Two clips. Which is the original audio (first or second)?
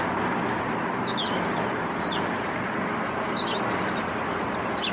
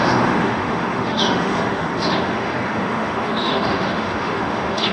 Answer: first